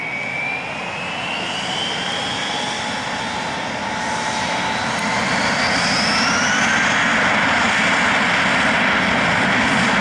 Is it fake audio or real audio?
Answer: real